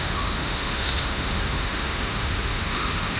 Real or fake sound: fake